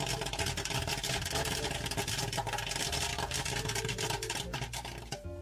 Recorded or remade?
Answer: recorded